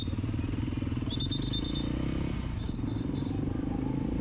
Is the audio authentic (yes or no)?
yes